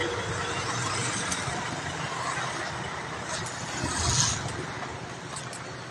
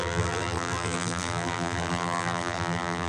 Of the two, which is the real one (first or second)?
first